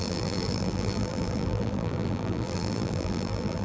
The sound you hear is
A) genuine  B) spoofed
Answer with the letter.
B